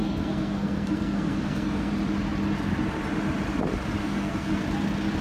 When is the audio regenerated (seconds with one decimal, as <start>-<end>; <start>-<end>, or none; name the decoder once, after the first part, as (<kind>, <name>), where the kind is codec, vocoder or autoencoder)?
0.0-1.9 (codec, SNAC); 4.0-4.6